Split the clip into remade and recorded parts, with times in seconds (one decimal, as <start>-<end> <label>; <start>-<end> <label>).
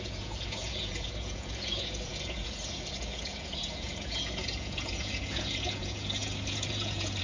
0.0-7.2 remade